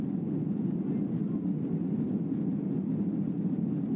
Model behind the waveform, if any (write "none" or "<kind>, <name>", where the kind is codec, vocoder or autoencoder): none